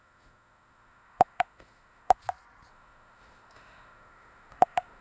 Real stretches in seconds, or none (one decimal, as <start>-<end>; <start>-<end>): 2.2-2.7